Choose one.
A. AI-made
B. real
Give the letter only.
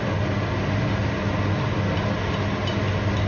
B